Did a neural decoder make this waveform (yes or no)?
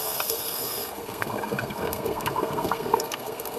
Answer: yes